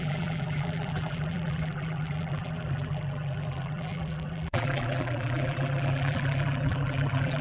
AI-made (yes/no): yes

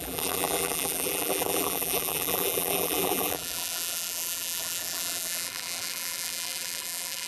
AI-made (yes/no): yes